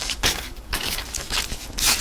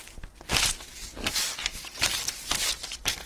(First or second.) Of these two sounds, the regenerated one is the first